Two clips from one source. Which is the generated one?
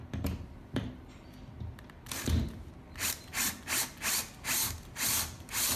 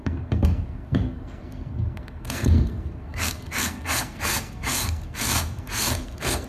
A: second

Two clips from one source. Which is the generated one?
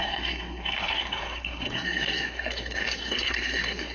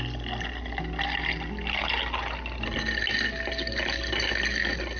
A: first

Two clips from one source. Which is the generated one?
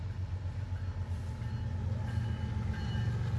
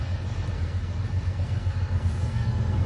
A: second